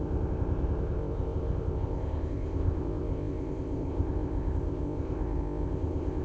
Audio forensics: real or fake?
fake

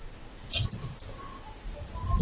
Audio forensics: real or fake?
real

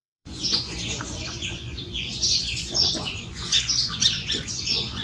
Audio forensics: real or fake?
fake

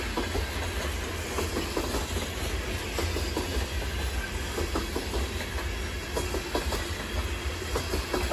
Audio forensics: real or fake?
real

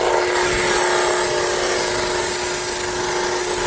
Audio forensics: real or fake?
real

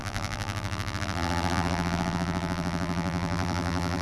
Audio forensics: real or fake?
fake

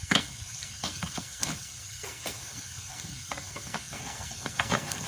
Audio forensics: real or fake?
fake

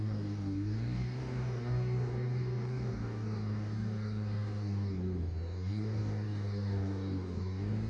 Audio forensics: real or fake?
fake